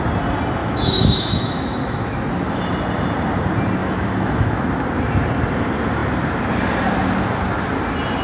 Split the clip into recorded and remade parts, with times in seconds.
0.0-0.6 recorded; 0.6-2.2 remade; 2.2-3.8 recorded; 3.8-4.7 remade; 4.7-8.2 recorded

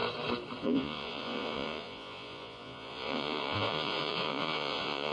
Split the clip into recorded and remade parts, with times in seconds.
0.0-0.6 recorded; 0.6-5.1 remade

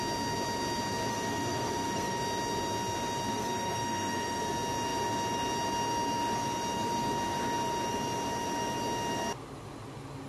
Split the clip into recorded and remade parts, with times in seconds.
0.0-1.1 recorded; 1.1-2.2 remade; 2.2-3.3 recorded; 3.3-4.4 remade; 4.4-10.3 recorded